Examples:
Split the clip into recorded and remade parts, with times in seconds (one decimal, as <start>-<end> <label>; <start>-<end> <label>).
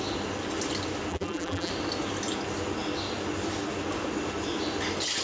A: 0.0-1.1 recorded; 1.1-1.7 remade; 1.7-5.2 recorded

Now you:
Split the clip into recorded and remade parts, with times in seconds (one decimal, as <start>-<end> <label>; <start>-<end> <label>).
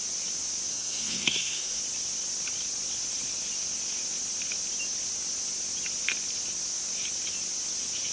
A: 0.0-0.7 recorded; 0.7-1.8 remade; 1.8-8.1 recorded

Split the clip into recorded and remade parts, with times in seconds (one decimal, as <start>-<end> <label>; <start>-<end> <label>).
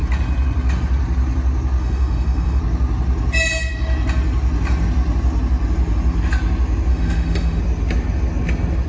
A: 0.0-1.8 recorded; 1.8-2.6 remade; 2.6-6.9 recorded; 6.9-7.6 remade; 7.6-8.9 recorded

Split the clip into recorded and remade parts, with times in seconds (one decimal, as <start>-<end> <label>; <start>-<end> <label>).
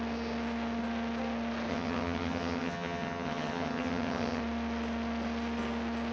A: 0.0-1.7 recorded; 1.7-4.4 remade; 4.4-6.1 recorded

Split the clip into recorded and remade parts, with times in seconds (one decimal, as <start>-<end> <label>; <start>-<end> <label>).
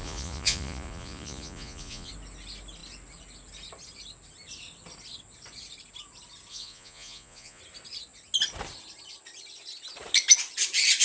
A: 0.0-2.1 remade; 2.1-6.5 recorded; 6.5-7.6 remade; 7.6-11.0 recorded